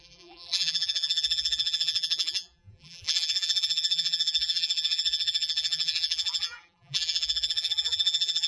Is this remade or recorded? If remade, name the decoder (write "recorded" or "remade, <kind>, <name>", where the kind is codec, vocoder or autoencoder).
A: remade, vocoder, BigVGAN v2